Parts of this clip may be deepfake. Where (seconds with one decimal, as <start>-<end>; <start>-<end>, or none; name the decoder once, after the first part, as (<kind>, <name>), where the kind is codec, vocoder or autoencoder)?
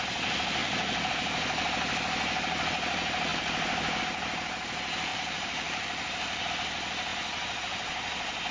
0.6-1.1 (vocoder, BigVGAN v2); 5.1-6.5